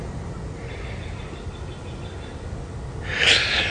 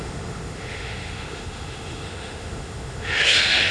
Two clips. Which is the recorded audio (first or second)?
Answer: first